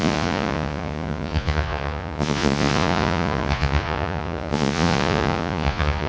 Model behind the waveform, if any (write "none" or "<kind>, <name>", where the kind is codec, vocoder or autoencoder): vocoder, Vocos